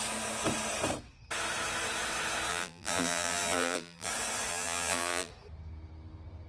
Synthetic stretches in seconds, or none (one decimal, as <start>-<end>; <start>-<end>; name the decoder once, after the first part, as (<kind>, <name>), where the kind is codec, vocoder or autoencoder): 2.5-4.1 (vocoder, BigVGAN v2); 4.5-5.3